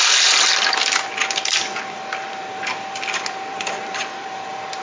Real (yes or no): no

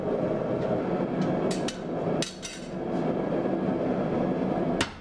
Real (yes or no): yes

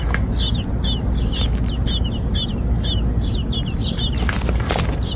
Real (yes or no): yes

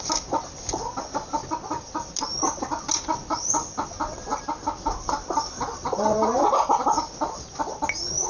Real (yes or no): yes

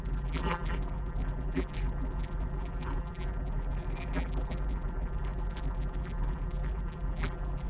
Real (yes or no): no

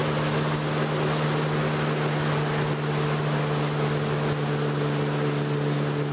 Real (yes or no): yes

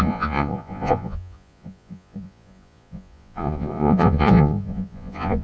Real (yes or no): no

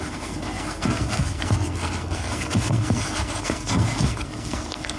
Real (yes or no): no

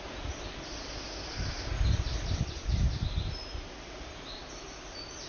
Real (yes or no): yes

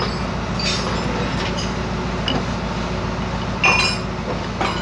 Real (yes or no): yes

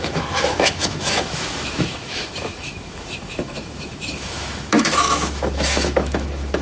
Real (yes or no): no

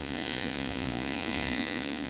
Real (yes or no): no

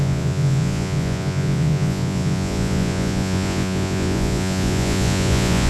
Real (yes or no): no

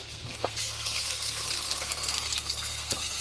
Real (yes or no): no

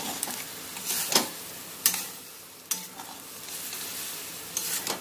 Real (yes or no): yes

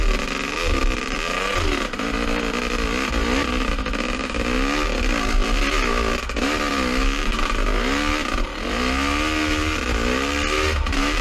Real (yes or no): yes